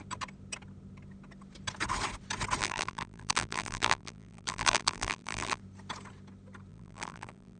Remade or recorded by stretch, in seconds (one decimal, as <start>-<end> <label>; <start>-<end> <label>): 0.0-2.6 recorded; 2.6-5.6 remade; 5.6-6.7 recorded; 6.7-7.6 remade